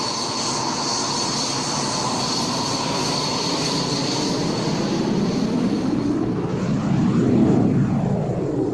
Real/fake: real